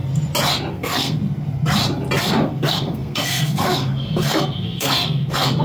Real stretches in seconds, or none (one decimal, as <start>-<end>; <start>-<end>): 0.0-0.7; 1.2-2.2